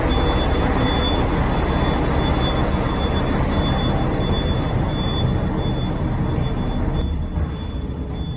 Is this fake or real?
real